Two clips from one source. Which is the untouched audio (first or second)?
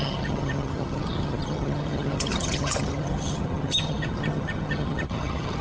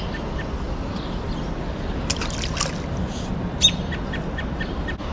second